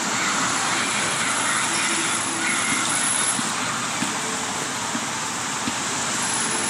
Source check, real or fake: real